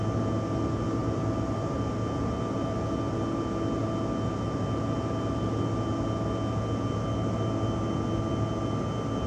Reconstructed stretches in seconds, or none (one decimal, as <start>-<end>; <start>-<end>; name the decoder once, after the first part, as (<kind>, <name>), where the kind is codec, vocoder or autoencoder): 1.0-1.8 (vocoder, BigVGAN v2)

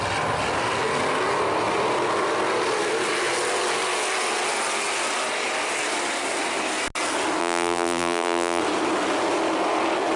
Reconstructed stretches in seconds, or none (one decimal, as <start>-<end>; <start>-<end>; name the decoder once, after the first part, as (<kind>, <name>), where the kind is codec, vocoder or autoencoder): 7.4-8.6 (vocoder, BigVGAN v2)

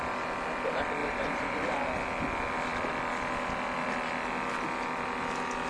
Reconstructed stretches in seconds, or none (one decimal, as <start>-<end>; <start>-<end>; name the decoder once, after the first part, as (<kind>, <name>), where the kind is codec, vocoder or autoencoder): 1.0-1.7 (vocoder, BigVGAN v2)

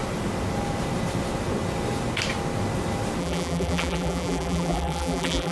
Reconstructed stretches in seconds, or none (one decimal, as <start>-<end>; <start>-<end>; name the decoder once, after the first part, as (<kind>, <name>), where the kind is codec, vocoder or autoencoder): 3.2-5.5 (vocoder, BigVGAN v2)